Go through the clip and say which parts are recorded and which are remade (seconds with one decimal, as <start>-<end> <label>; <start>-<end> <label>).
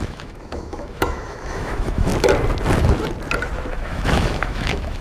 0.0-2.1 remade; 2.1-3.7 recorded; 3.7-5.0 remade